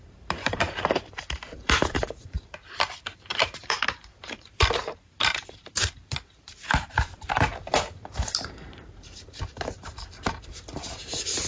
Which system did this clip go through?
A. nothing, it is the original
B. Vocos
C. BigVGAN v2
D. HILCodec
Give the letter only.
C